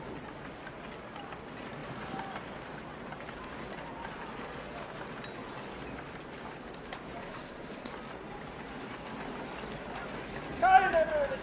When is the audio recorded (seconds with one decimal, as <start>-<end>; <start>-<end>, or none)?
0.0-7.2; 7.9-11.4